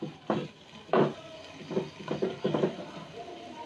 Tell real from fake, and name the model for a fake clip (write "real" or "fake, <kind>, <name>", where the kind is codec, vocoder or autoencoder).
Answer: real